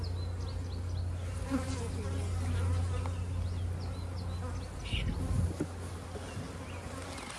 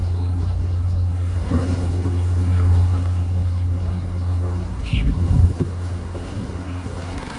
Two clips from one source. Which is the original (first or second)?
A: first